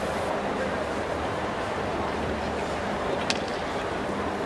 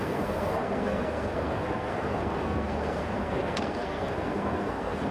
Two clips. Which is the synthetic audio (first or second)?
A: second